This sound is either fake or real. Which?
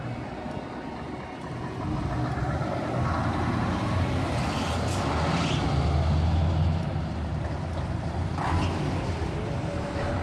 real